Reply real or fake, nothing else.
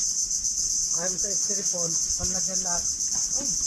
real